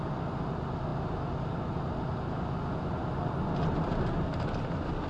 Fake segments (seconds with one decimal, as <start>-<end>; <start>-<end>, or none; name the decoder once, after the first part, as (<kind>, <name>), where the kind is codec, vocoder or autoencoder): none